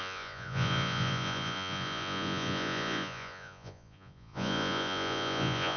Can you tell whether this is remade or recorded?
remade